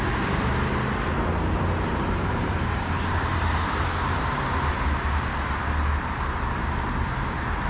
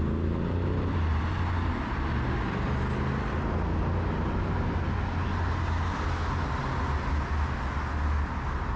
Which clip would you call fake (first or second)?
first